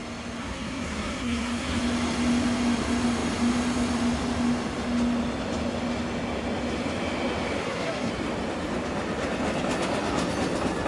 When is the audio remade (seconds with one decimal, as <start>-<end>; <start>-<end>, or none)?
0.4-1.8; 7.6-8.1